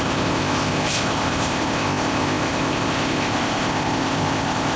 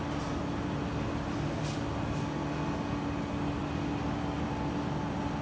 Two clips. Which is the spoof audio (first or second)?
first